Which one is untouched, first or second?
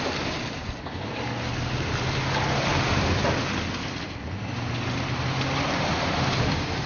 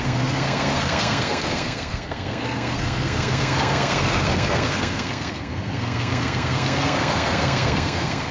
first